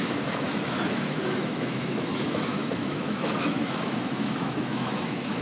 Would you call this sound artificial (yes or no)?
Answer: yes